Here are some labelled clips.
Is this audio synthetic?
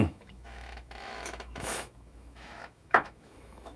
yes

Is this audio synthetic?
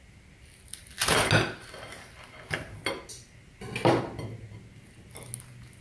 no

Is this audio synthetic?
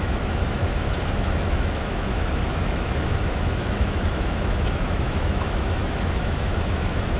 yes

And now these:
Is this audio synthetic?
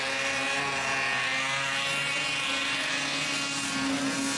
no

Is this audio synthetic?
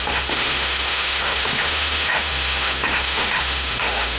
yes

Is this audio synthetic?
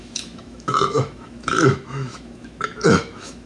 yes